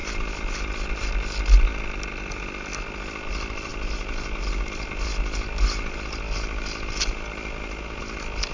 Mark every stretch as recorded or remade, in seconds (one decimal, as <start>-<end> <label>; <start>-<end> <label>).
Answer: 0.0-8.5 recorded